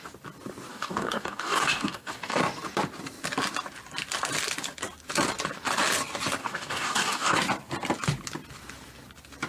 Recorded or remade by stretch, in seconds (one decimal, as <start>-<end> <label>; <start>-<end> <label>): 0.0-0.7 recorded; 0.7-2.4 remade; 2.4-6.4 recorded; 6.4-7.4 remade; 7.4-9.5 recorded